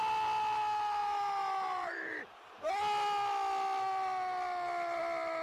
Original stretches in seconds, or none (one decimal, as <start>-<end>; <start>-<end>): 0.0-1.0; 2.7-5.4